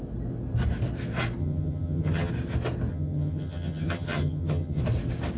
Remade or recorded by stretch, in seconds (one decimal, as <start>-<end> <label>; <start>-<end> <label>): 0.0-1.4 recorded; 1.4-2.3 remade; 2.3-2.9 recorded; 2.9-4.8 remade; 4.8-5.4 recorded